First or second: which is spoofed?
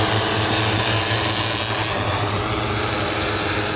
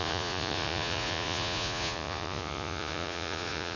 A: second